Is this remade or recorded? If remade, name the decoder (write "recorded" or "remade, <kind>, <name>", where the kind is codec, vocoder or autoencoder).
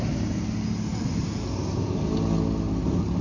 recorded